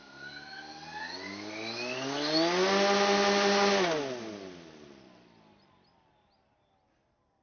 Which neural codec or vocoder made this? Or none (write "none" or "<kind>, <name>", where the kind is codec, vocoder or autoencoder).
none